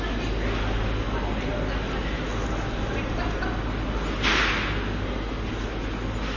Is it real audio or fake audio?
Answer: real